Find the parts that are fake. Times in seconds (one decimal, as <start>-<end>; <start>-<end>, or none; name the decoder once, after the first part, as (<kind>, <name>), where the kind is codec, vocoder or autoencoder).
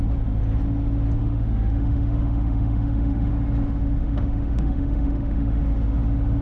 1.2-3.3 (autoencoder, DAC-VAE); 4.0-5.6